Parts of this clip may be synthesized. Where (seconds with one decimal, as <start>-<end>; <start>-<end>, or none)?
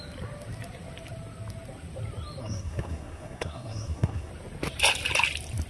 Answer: 2.4-4.3